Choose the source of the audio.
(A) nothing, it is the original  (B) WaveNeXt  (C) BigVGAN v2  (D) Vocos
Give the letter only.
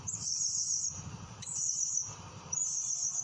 C